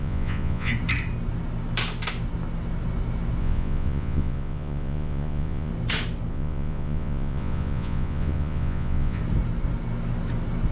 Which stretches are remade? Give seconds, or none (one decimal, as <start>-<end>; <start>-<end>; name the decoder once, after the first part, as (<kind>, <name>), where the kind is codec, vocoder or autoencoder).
0.0-0.7 (vocoder, Vocos); 3.4-5.7; 6.3-9.2